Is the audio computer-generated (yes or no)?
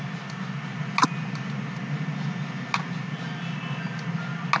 no